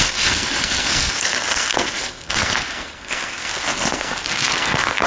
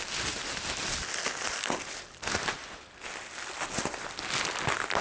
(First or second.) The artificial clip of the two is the first